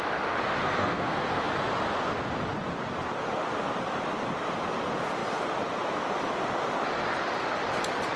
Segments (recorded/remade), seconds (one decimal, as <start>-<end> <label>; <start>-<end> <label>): 0.0-0.6 recorded; 0.6-1.4 remade; 1.4-8.2 recorded